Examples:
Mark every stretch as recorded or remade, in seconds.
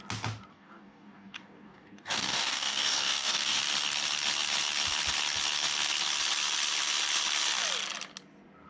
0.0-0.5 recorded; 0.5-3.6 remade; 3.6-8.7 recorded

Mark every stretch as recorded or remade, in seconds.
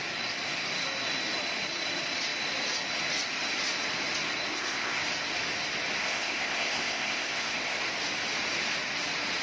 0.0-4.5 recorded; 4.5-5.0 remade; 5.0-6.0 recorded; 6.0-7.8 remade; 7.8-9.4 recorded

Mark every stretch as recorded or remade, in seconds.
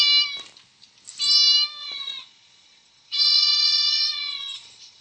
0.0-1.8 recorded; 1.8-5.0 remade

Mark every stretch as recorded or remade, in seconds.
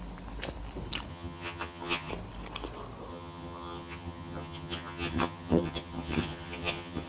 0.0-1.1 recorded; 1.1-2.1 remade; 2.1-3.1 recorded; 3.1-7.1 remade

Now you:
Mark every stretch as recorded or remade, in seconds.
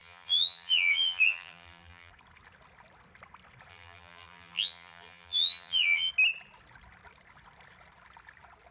0.0-2.1 remade; 2.1-3.7 recorded; 3.7-6.1 remade; 6.1-8.7 recorded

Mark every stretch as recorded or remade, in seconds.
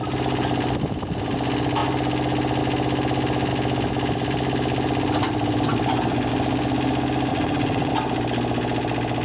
0.0-7.3 recorded; 7.3-7.9 remade; 7.9-9.2 recorded